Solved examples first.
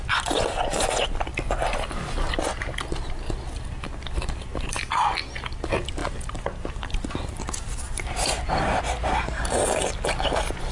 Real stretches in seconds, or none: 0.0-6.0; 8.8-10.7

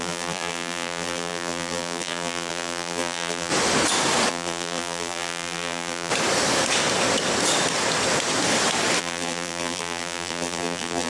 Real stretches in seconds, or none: 3.5-4.3; 6.1-9.0